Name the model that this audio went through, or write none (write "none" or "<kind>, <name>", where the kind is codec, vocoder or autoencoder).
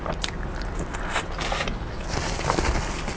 none